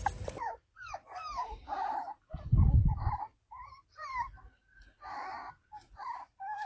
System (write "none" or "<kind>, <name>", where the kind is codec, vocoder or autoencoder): vocoder, BigVGAN v2